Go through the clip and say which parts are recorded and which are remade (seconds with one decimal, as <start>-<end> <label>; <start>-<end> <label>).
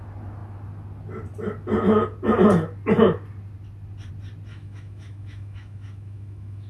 0.0-4.5 recorded; 4.5-6.7 remade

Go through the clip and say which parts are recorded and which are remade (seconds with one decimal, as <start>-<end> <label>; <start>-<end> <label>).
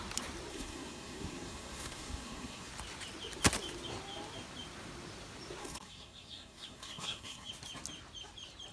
0.0-0.5 recorded; 0.5-2.7 remade; 2.7-5.6 recorded; 5.6-7.5 remade; 7.5-8.7 recorded